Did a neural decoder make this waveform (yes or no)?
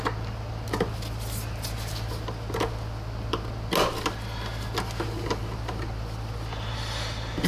no